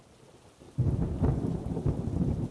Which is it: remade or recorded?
recorded